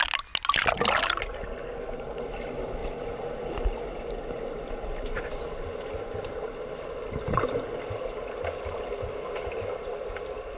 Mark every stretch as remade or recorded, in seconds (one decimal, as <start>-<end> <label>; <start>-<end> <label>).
0.0-10.6 recorded